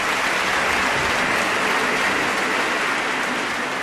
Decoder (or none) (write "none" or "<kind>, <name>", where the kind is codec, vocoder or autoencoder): none